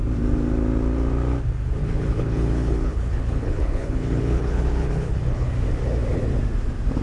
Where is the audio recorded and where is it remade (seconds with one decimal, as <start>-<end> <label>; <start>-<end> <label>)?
0.0-1.8 recorded; 1.8-5.5 remade; 5.5-7.0 recorded